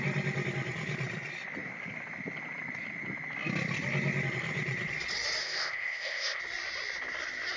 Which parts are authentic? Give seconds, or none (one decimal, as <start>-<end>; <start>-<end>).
0.0-5.4; 6.4-7.6